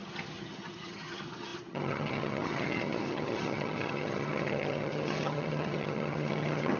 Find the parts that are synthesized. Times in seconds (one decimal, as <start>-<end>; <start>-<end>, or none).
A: 0.0-6.8